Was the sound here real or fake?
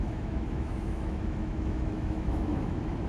fake